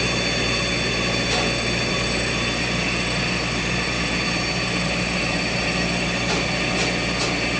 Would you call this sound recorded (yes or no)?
yes